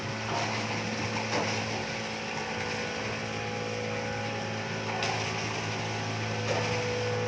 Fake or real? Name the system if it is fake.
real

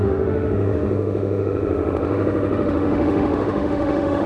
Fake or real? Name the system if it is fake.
fake, autoencoder, DAC-VAE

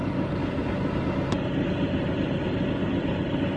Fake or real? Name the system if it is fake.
real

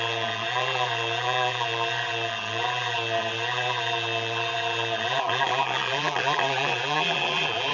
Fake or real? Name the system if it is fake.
fake, vocoder, BigVGAN v2